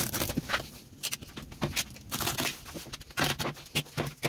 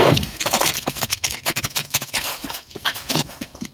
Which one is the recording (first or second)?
first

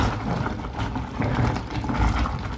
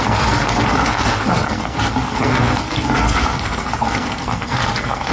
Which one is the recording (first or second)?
first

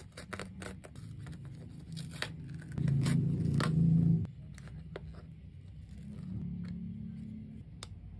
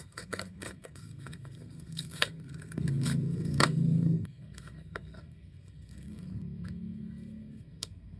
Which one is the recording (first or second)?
first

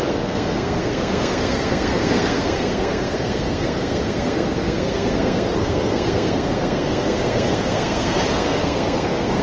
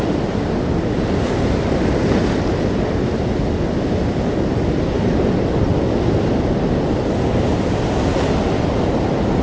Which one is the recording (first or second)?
second